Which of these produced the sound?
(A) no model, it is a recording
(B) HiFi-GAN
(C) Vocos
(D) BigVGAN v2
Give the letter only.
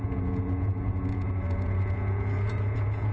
C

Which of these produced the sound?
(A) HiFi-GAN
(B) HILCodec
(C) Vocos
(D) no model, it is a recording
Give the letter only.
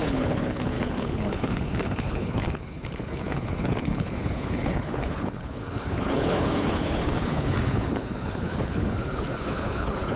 B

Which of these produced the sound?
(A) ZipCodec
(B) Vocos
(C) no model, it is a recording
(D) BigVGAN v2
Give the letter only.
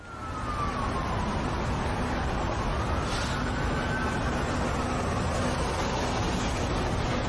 C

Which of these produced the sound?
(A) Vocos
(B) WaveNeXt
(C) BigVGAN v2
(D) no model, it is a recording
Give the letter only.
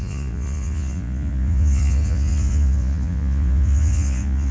A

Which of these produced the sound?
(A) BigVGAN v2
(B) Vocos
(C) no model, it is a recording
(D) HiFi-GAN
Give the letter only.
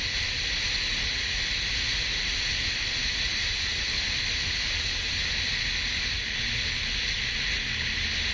C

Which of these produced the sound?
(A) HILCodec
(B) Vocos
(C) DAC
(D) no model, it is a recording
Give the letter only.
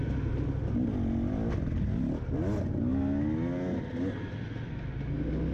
D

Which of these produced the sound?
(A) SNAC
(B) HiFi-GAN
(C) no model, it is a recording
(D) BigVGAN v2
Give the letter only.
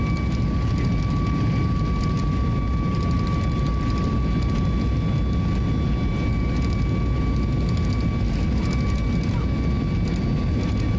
C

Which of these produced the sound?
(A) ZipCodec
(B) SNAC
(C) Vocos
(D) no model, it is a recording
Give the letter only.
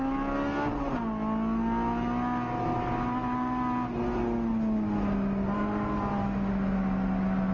D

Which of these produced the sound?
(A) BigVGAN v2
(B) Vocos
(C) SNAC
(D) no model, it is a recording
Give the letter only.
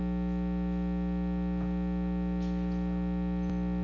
D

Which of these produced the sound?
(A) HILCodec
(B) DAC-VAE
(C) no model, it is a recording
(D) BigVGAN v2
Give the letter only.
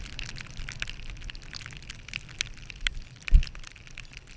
D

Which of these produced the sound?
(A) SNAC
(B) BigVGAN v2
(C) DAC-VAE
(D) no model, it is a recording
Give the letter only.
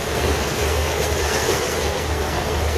A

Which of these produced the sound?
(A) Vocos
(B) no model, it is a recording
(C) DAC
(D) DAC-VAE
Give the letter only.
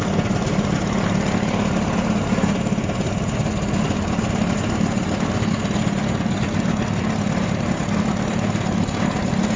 B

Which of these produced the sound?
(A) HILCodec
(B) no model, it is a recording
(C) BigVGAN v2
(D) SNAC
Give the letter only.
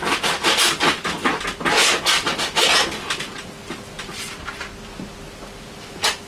B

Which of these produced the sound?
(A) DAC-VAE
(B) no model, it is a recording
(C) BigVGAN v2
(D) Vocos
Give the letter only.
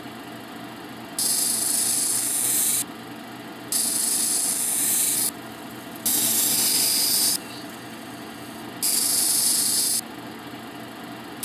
B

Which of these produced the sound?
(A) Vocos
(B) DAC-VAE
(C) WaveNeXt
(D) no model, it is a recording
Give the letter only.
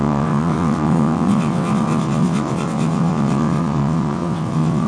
C